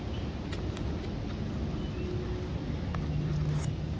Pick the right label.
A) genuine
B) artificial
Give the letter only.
A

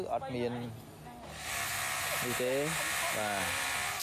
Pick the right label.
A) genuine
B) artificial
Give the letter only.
A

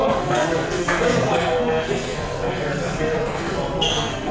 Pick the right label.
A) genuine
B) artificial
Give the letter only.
B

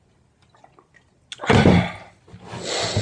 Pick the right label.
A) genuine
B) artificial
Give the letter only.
A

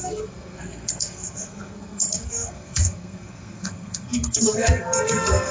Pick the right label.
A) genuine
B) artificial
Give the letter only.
B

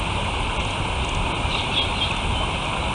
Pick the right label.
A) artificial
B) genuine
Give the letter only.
B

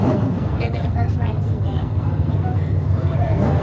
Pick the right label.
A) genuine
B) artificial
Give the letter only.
B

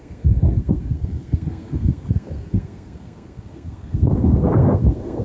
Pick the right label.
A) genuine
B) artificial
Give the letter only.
B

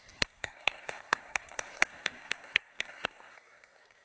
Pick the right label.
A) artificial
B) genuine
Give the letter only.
A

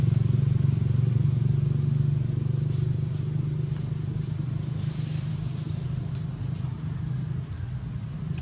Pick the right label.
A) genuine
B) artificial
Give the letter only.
A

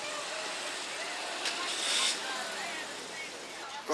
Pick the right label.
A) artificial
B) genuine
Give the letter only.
B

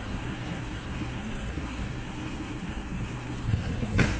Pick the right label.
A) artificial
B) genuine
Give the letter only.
A